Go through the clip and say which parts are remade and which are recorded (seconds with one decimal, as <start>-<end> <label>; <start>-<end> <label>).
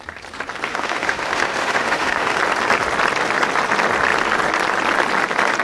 0.0-0.7 recorded; 0.7-2.4 remade; 2.4-5.6 recorded